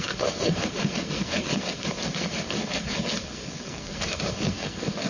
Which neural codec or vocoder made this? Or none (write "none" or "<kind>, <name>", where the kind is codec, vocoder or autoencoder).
codec, SNAC